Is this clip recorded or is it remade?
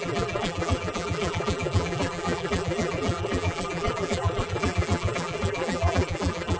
remade